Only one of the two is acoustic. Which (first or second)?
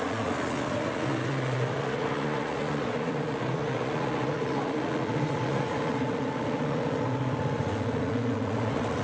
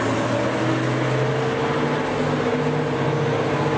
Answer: second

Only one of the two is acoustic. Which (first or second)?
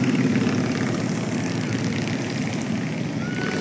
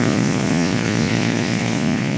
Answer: first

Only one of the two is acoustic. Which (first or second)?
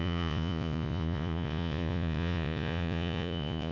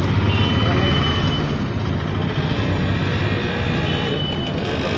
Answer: second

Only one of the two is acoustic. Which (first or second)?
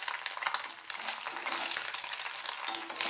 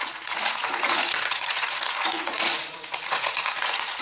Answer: first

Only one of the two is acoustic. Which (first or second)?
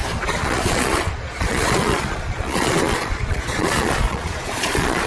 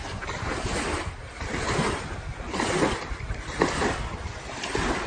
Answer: second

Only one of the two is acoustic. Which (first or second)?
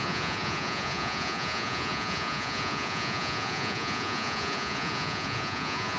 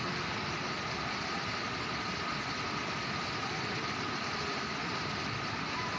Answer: second